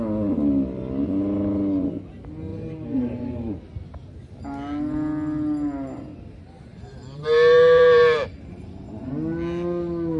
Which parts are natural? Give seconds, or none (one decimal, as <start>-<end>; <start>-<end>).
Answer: 0.0-2.5; 3.5-6.7; 9.1-10.2